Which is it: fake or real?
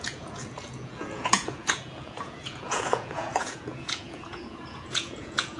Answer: fake